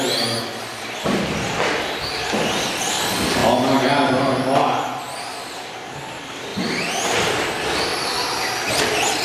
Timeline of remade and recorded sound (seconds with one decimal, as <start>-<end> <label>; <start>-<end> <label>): 0.0-0.7 recorded; 0.7-2.0 remade; 2.0-9.2 recorded